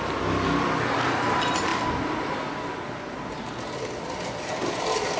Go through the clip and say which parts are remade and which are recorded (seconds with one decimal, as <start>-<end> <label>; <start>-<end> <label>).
0.0-5.2 recorded